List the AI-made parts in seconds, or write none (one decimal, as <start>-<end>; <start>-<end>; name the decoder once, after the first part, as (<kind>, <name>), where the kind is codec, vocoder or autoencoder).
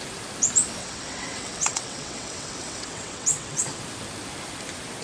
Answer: 0.8-3.8 (vocoder, WaveNeXt)